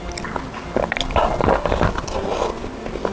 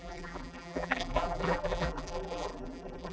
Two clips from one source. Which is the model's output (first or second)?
second